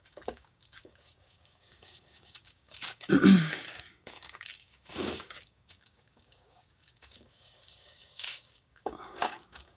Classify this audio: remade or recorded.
remade